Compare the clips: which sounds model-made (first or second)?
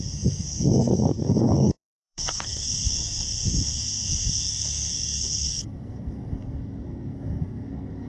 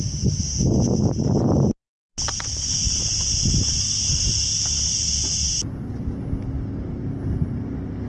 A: first